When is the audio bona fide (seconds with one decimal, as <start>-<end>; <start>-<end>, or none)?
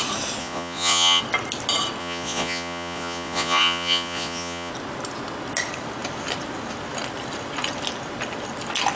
0.0-0.4; 1.2-2.0; 4.7-9.0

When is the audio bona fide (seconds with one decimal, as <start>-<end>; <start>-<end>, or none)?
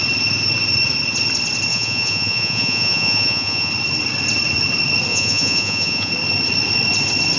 0.0-1.7; 3.7-5.1; 6.1-7.4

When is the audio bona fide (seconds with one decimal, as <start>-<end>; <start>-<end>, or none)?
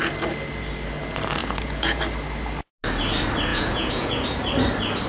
0.0-1.4; 2.0-3.5; 4.1-5.1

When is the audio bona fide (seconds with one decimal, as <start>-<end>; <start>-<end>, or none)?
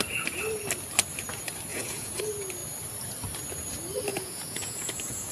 0.0-1.7; 2.2-4.1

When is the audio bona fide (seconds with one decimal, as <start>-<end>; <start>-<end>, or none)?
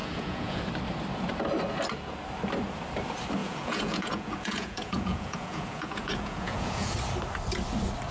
0.6-3.4; 6.9-8.1